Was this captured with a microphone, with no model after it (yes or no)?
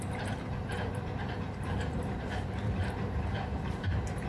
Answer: no